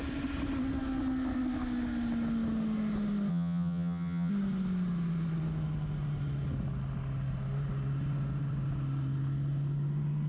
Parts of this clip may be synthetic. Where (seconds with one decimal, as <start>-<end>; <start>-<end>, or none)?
3.3-4.3